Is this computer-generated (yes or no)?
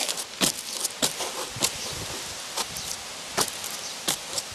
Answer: no